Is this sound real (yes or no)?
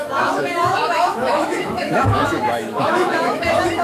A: no